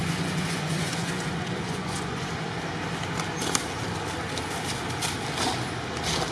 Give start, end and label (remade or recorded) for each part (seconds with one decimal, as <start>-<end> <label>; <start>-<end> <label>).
0.0-2.3 remade; 2.3-6.3 recorded